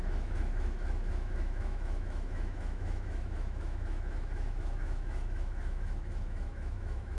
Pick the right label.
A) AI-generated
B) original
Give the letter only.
A